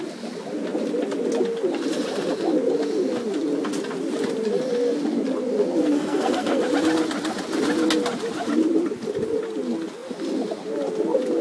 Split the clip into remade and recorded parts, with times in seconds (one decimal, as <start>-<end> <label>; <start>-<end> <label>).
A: 0.0-5.8 recorded; 5.8-6.6 remade; 6.6-11.4 recorded